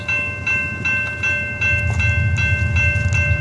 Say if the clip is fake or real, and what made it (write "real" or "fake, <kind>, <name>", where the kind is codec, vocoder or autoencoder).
real